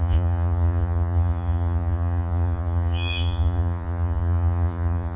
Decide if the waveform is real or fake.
fake